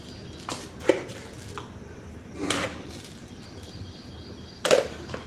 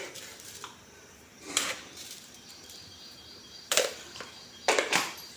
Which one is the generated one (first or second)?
second